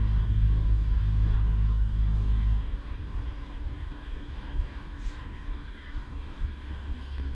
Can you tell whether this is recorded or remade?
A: remade